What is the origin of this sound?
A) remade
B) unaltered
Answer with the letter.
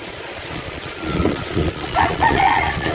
A